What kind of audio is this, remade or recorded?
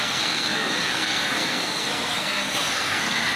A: remade